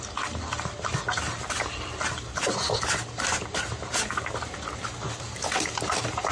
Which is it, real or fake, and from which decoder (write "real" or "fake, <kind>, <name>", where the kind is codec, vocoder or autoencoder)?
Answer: real